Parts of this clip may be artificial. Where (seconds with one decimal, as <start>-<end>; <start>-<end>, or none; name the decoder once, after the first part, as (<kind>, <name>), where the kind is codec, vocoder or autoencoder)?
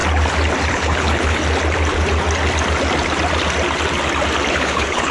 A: 0.7-1.4 (codec, HILCodec); 4.5-5.1